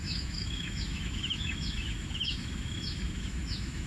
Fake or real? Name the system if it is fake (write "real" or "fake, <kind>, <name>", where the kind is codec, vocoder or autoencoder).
fake, autoencoder, DAC-VAE